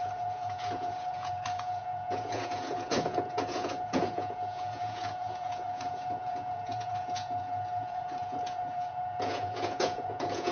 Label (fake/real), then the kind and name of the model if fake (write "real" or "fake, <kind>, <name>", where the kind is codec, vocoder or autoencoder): fake, vocoder, Vocos